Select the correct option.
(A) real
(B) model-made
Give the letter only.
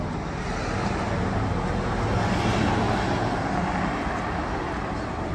A